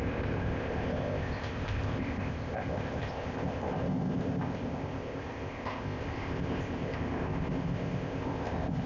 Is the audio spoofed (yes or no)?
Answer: yes